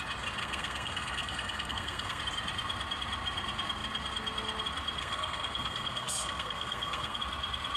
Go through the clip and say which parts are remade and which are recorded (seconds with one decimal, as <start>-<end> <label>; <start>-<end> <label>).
0.0-0.4 recorded; 0.4-2.2 remade; 2.2-5.0 recorded; 5.0-7.2 remade; 7.2-7.8 recorded